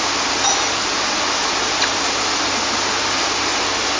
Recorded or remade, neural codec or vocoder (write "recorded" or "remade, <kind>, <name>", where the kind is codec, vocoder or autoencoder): recorded